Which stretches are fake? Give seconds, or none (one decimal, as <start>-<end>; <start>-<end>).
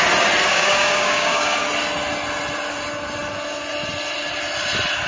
0.5-1.6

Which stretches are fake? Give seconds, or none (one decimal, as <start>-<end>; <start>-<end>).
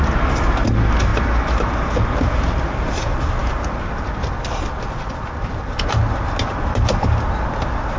none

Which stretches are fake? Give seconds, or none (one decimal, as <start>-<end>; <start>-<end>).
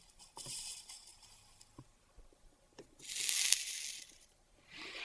none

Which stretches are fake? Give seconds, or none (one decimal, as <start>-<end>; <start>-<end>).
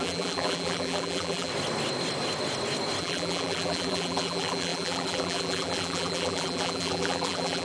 0.0-1.5; 3.0-7.6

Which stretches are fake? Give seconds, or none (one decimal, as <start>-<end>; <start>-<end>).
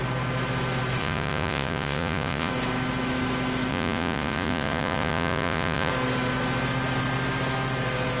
1.0-2.5; 3.7-5.9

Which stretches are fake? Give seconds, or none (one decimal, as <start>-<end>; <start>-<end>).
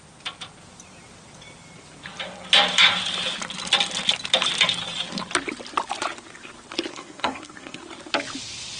6.9-7.8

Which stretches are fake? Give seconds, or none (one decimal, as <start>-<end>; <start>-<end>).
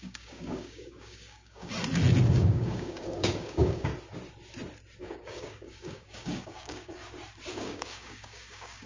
0.0-1.7; 2.3-3.9; 5.0-7.0; 7.5-8.9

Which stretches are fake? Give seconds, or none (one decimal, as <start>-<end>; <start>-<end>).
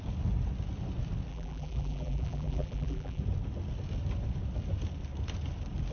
1.3-3.2